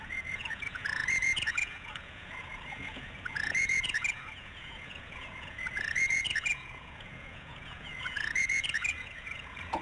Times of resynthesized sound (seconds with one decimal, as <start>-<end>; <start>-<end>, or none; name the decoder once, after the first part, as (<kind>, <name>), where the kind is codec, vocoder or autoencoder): 0.0-9.8 (vocoder, Vocos)